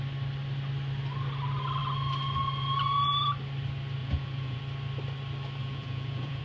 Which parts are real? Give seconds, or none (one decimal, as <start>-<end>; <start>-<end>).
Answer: 0.0-4.0; 4.6-5.6